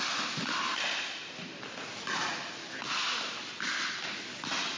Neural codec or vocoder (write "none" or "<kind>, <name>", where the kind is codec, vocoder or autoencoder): none